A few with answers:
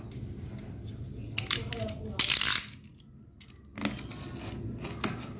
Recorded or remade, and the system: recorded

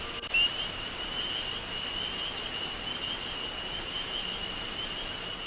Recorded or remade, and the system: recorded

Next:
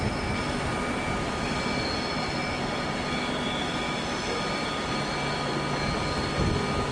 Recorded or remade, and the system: recorded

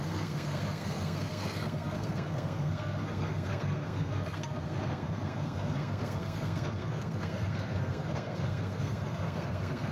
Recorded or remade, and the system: remade, codec, SNAC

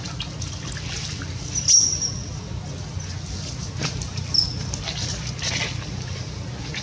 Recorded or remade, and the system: recorded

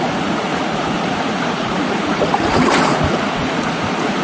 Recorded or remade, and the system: remade, vocoder, Vocos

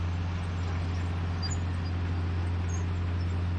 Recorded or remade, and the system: recorded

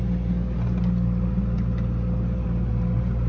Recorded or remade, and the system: recorded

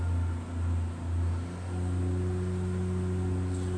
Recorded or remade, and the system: recorded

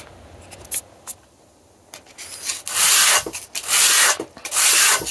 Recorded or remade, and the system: recorded